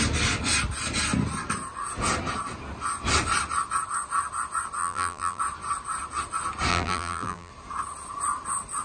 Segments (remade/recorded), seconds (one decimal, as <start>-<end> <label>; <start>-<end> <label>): 0.0-4.8 recorded; 4.8-5.4 remade; 5.4-6.7 recorded; 6.7-7.5 remade; 7.5-8.8 recorded

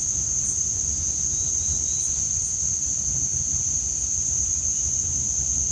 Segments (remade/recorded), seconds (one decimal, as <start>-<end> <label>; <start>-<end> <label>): 0.0-2.9 remade; 2.9-3.9 recorded; 3.9-4.5 remade; 4.5-5.7 recorded

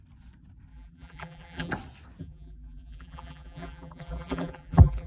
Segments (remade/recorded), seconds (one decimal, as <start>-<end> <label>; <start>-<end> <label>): 0.0-0.7 recorded; 0.7-1.7 remade; 1.7-2.2 recorded; 2.2-5.1 remade

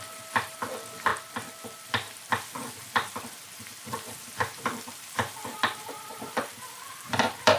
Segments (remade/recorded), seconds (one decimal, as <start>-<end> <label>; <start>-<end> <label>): 0.0-7.6 remade

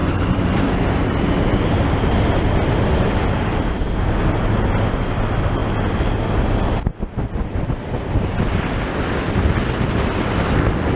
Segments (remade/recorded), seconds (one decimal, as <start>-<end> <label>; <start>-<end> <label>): 0.0-5.0 recorded; 5.0-5.6 remade; 5.6-9.1 recorded; 9.1-11.0 remade

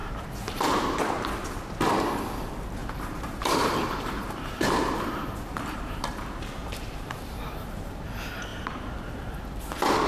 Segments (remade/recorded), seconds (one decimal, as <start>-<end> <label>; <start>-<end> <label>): 0.0-0.7 remade; 0.7-2.8 recorded; 2.8-8.0 remade; 8.0-8.5 recorded; 8.5-9.4 remade; 9.4-10.1 recorded

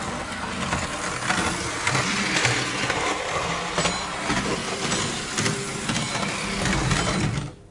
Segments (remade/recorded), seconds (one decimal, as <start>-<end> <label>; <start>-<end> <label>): 0.0-2.4 recorded; 2.4-3.1 remade; 3.1-4.6 recorded; 4.6-7.2 remade; 7.2-7.7 recorded

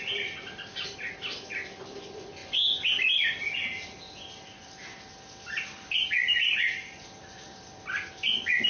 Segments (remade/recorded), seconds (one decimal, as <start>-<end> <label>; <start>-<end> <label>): 0.0-8.7 remade